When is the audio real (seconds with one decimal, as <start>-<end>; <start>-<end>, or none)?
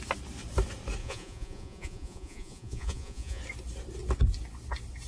0.0-1.0; 3.4-5.1